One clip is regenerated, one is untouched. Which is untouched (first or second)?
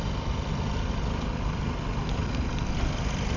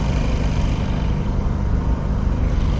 second